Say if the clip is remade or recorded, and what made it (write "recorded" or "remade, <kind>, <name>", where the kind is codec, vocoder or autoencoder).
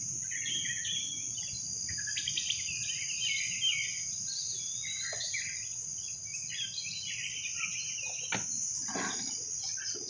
recorded